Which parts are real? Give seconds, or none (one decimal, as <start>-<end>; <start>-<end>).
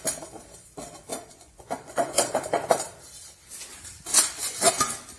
0.0-1.1; 2.3-4.1; 4.7-5.2